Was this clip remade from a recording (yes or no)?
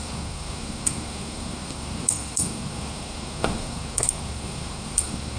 yes